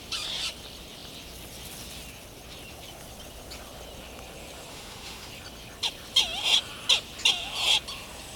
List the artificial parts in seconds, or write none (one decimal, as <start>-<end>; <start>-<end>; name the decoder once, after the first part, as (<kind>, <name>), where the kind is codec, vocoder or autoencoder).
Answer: 4.7-5.3 (autoencoder, DAC-VAE)